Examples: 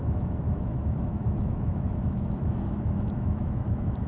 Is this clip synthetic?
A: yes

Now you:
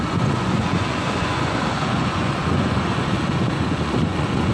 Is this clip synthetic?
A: yes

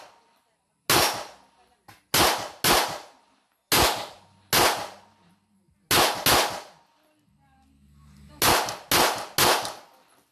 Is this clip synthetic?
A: no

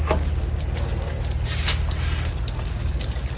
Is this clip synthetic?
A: no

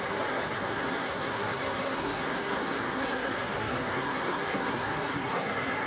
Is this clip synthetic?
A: yes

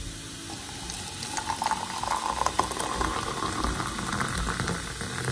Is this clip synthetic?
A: no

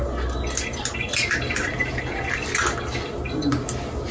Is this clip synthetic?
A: no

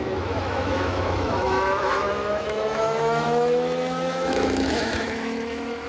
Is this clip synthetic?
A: yes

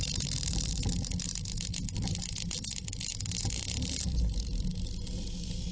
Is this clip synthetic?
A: no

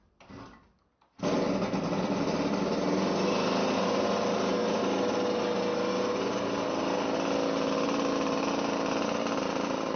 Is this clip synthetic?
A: no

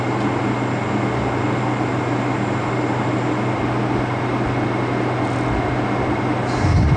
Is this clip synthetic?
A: no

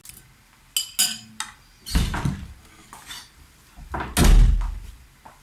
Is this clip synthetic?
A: no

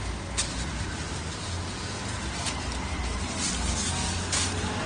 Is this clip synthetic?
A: no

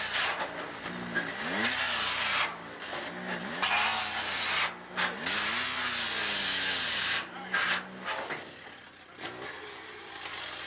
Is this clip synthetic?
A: no